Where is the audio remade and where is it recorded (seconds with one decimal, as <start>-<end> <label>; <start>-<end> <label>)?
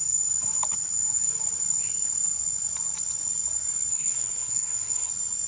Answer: 0.0-3.9 recorded; 3.9-5.1 remade; 5.1-5.5 recorded